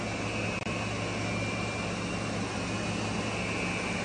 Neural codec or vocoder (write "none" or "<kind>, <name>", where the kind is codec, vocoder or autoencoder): none